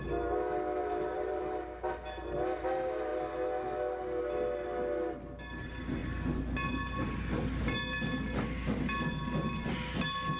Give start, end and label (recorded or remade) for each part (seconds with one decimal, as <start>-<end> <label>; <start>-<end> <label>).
0.0-0.8 recorded; 0.8-1.4 remade; 1.4-10.4 recorded